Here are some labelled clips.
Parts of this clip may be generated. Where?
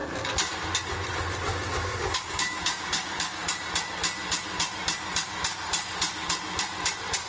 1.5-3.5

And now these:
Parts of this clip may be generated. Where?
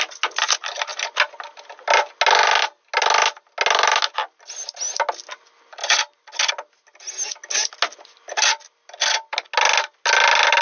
none